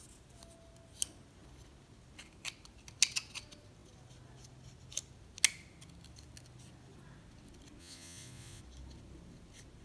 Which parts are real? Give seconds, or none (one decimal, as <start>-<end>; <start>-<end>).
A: 0.0-7.8; 8.6-9.8